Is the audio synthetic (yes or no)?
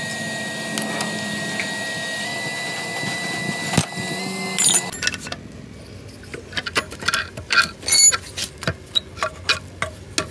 no